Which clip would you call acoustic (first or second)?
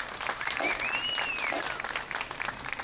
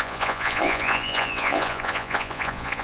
first